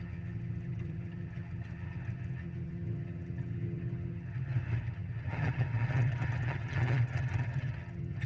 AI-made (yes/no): yes